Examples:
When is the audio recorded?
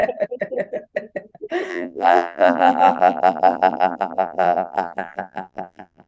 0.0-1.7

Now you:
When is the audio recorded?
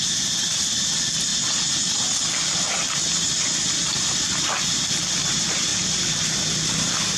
0.0-5.7; 6.2-7.2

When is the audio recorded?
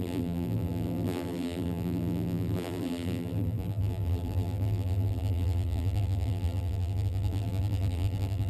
none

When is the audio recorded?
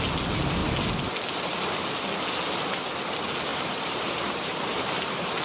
0.0-3.5